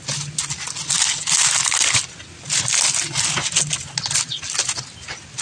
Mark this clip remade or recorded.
recorded